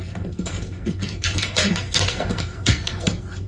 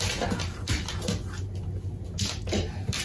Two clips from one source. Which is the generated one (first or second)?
first